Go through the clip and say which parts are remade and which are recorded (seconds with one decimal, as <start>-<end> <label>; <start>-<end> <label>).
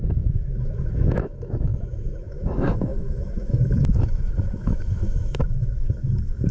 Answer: 0.0-6.5 remade